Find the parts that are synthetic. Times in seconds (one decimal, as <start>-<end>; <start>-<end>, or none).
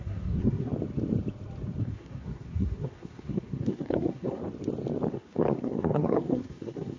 0.0-0.7; 1.8-4.4; 5.1-7.0